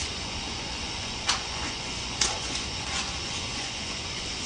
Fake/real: fake